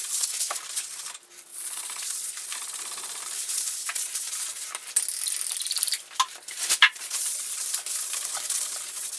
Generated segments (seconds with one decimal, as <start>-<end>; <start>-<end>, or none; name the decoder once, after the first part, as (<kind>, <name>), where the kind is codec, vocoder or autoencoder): 1.5-2.3 (vocoder, Vocos); 6.9-7.6